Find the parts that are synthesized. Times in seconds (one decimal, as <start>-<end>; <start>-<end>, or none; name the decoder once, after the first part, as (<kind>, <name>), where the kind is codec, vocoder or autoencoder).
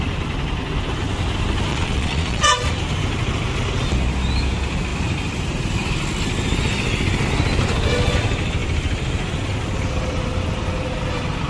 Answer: 1.7-2.7 (vocoder, Vocos)